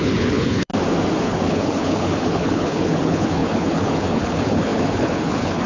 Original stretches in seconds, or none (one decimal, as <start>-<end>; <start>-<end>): 0.7-1.2